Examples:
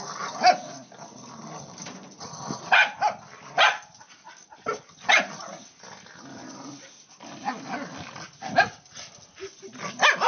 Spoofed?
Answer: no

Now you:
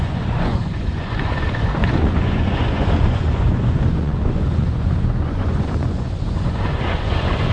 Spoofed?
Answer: yes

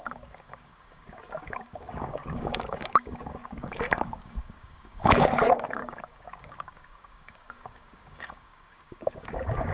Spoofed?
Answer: yes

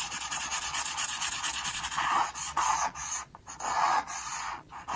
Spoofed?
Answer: yes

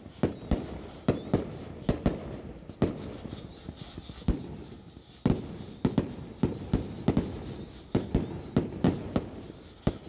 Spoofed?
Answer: no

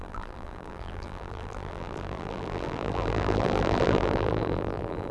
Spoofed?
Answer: yes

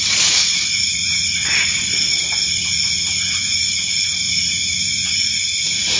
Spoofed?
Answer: yes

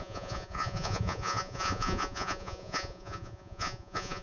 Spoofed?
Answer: yes